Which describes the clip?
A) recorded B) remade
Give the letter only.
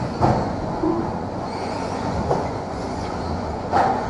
B